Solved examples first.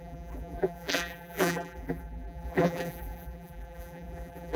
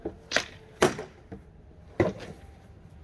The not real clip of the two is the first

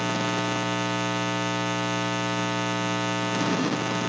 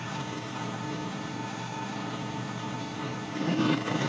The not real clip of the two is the second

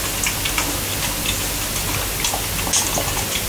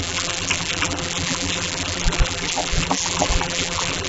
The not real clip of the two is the second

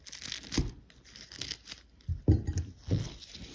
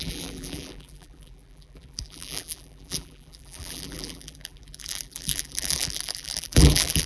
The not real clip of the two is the second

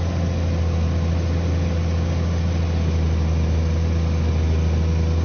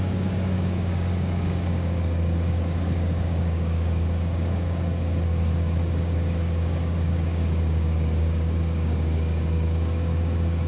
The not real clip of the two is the second